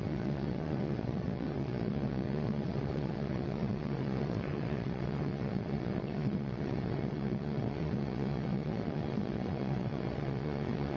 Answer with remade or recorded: remade